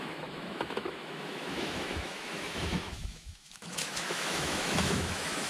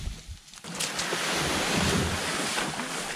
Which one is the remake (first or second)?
first